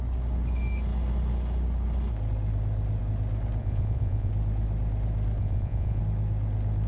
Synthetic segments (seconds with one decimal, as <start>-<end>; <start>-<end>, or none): 3.6-4.3; 5.4-6.0

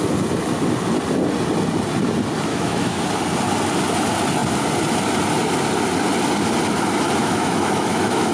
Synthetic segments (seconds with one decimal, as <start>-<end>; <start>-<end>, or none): 2.5-3.0; 7.2-8.3